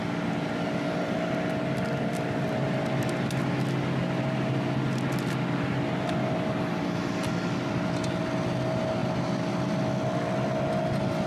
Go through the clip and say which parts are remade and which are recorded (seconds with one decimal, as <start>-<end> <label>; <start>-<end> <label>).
0.0-11.3 recorded